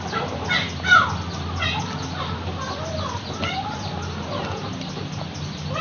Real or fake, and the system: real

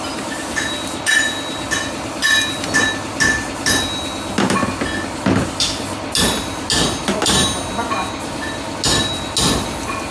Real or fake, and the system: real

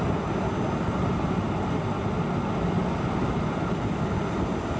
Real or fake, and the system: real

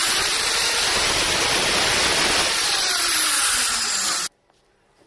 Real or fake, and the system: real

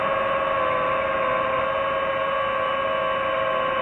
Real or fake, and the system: real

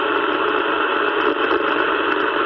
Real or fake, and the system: real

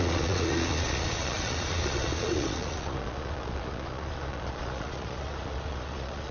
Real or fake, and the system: fake, vocoder, Vocos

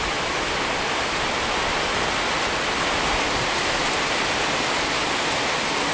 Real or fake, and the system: real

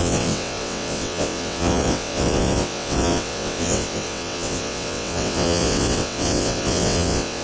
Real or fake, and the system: fake, vocoder, WaveNeXt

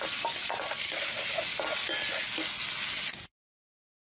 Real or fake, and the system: real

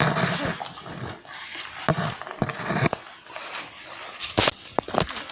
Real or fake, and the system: real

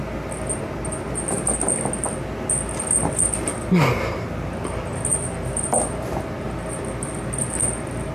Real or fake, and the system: real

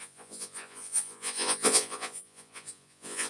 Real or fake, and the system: fake, vocoder, Vocos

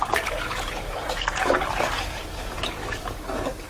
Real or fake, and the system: fake, codec, DAC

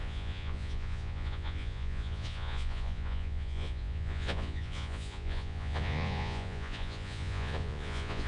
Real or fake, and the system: fake, vocoder, Vocos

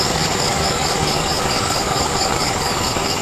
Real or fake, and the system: fake, codec, DAC